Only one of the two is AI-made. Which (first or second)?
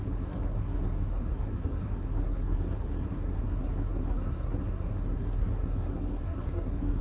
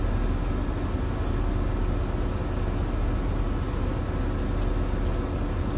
first